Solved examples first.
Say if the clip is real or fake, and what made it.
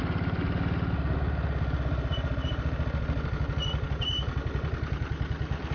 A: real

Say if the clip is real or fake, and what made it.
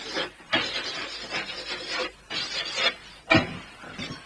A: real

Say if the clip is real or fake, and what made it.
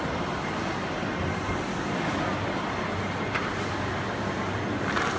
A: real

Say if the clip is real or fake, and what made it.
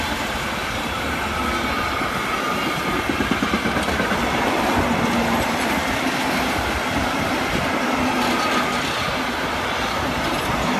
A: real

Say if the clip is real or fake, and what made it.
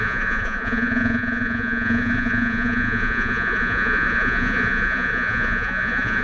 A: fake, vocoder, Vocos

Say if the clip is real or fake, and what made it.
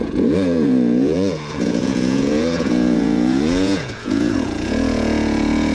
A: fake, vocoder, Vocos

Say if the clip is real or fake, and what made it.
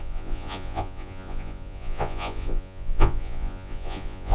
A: fake, vocoder, Vocos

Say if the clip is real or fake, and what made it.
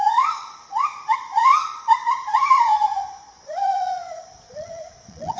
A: fake, vocoder, Vocos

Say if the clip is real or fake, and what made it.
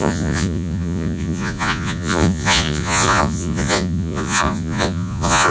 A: fake, vocoder, Vocos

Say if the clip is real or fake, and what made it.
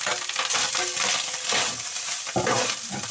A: real